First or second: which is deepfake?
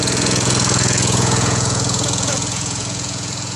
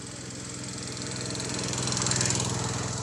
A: first